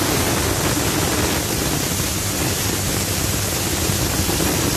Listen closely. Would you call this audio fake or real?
fake